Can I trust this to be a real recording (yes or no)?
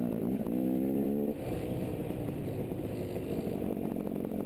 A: no